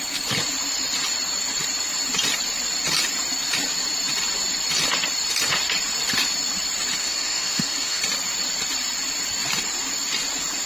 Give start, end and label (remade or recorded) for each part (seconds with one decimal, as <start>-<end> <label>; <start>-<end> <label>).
0.0-7.0 recorded; 7.0-8.0 remade; 8.0-10.7 recorded

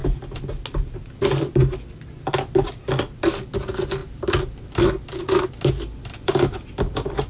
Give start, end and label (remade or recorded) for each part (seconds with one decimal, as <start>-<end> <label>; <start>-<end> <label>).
0.0-7.3 recorded